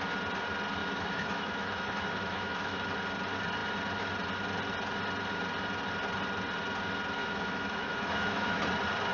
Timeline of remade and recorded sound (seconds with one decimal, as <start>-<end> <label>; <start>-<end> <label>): 0.0-0.8 recorded; 0.8-2.9 remade; 2.9-7.2 recorded; 7.2-8.6 remade; 8.6-9.1 recorded